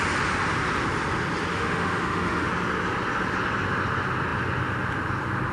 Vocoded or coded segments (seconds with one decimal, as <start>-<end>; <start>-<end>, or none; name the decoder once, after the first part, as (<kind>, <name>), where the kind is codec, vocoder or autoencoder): 1.5-2.5 (autoencoder, DAC-VAE)